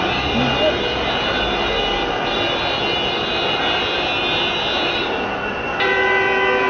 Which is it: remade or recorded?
recorded